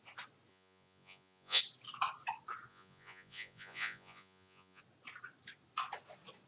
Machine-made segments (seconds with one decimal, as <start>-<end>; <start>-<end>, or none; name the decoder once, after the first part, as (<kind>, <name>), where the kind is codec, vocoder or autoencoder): 0.5-1.6 (vocoder, Vocos); 2.7-4.8